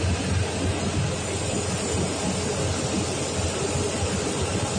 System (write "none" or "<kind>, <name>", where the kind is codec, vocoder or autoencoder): none